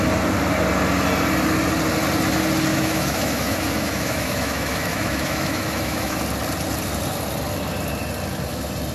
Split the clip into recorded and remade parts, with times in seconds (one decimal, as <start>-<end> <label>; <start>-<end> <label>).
0.0-2.7 recorded; 2.7-6.2 remade; 6.2-8.9 recorded